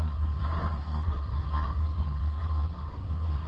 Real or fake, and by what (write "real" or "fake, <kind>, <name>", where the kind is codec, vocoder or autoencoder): fake, codec, SNAC